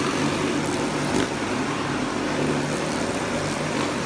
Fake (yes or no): no